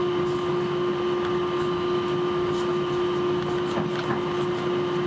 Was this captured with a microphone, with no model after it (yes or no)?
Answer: yes